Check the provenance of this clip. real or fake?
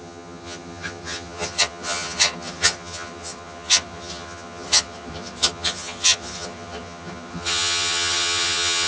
fake